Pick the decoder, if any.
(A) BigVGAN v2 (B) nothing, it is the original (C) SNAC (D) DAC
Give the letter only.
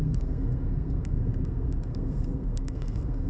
C